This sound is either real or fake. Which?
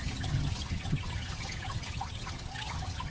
fake